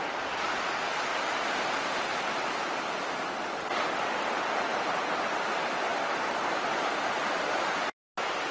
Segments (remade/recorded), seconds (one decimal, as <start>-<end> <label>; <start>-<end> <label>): 0.0-1.1 recorded; 1.1-2.5 remade; 2.5-4.7 recorded; 4.7-5.2 remade; 5.2-8.5 recorded